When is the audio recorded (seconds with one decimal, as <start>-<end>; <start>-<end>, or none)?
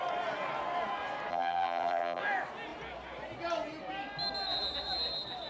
0.0-1.3; 2.2-5.5